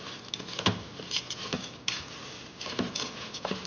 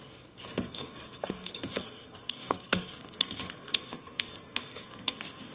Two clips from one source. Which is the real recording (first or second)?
first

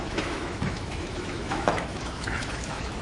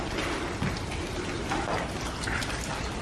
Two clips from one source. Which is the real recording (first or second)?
second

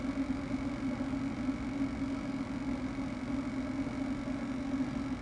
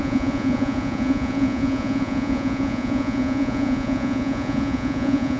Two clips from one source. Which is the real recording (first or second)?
first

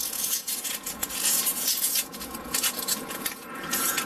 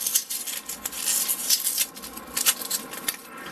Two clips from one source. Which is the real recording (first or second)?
second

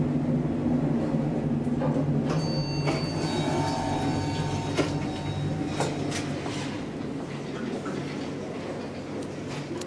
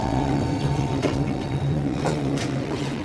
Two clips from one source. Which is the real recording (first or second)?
first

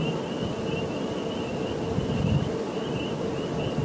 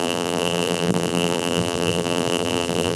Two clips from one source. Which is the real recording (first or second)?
first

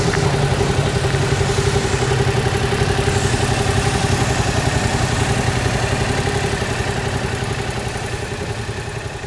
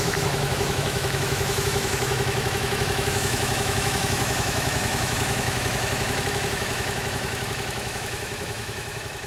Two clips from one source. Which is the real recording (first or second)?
first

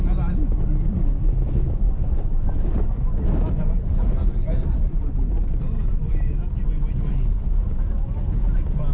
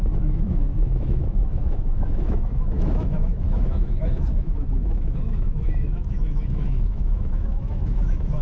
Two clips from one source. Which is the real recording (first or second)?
first